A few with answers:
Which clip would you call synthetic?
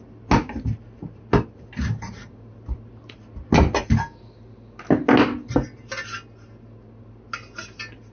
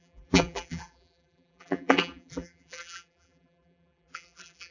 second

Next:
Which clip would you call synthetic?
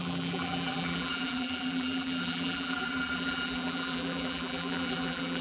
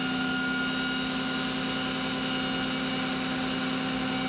first